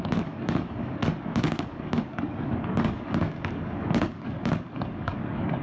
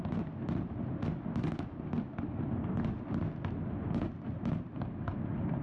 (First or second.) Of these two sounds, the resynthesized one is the first